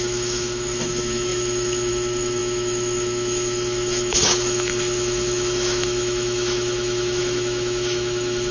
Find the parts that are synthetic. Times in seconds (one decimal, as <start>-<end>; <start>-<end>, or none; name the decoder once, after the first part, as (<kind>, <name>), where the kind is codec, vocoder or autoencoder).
0.0-8.5 (autoencoder, DAC-VAE)